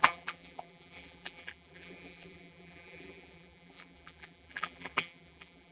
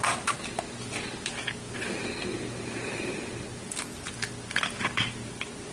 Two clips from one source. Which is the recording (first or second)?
second